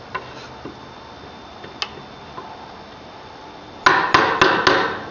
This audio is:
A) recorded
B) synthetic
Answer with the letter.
A